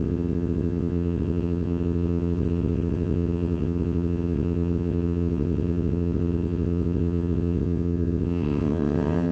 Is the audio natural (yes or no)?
no